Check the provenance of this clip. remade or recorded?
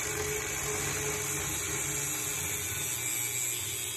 recorded